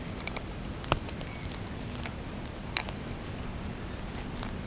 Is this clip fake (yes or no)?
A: no